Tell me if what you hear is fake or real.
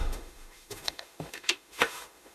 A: fake